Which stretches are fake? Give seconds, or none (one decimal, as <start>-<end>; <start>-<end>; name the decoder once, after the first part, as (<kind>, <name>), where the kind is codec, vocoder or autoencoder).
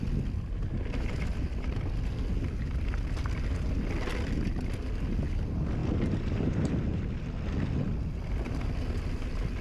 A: none